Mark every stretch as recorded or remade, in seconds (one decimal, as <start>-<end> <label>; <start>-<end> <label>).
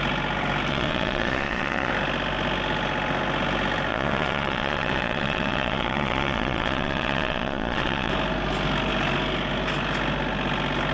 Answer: 0.0-0.7 recorded; 0.7-1.9 remade; 1.9-3.9 recorded; 3.9-8.1 remade; 8.1-10.9 recorded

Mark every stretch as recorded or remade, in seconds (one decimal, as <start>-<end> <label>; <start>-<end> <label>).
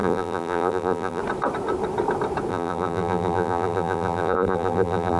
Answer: 0.0-1.2 remade; 1.2-2.5 recorded; 2.5-5.2 remade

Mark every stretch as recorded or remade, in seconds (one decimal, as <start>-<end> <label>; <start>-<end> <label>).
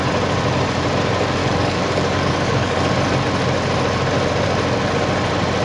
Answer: 0.0-1.4 recorded; 1.4-2.9 remade; 2.9-5.6 recorded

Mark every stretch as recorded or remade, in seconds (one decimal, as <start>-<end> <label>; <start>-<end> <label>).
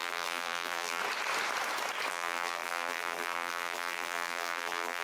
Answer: 0.0-1.0 remade; 1.0-2.1 recorded; 2.1-5.0 remade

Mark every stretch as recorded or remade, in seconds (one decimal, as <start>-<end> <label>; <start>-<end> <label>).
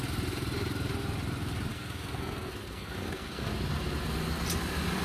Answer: 0.0-1.7 recorded; 1.7-3.5 remade; 3.5-5.0 recorded